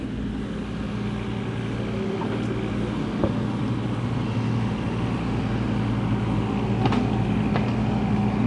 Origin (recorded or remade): recorded